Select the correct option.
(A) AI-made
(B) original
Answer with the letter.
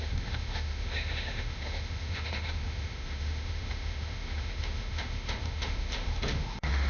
A